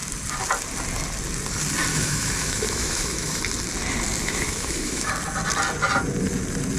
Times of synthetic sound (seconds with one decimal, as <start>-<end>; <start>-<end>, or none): 1.9-3.4; 4.2-5.1